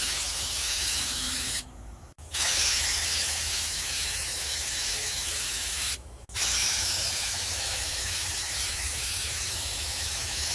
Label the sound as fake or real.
fake